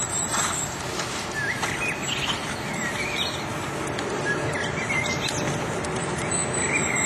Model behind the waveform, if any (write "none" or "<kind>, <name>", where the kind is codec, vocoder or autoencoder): none